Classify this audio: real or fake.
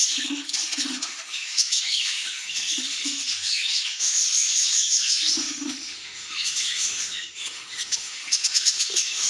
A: fake